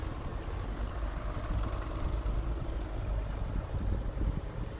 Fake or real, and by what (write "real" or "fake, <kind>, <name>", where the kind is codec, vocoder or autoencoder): real